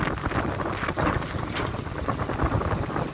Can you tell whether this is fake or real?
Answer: real